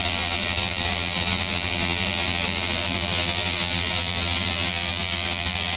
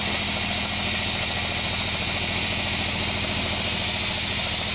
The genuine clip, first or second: second